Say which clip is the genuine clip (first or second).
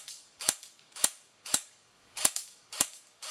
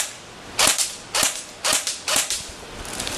second